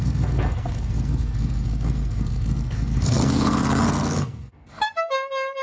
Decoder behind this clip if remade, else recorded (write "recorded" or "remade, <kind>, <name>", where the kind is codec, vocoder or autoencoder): remade, codec, SNAC